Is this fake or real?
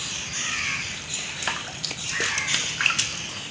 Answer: real